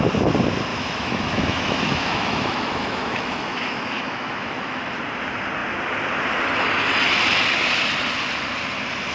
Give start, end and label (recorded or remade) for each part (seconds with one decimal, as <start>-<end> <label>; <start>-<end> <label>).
0.0-0.7 recorded; 0.7-5.0 remade; 5.0-9.1 recorded